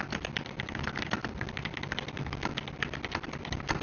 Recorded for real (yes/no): yes